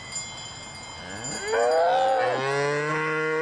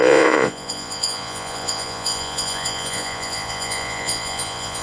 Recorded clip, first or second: first